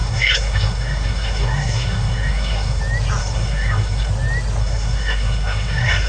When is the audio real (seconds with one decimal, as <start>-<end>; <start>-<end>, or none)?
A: 2.8-3.2; 4.1-4.6